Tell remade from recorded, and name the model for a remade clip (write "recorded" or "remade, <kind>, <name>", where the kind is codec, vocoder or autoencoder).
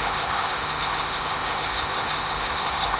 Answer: remade, autoencoder, DAC-VAE